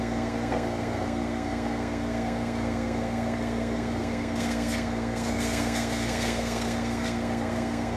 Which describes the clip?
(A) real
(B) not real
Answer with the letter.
B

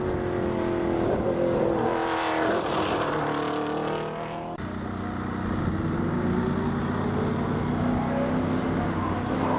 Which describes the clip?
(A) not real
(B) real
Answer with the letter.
B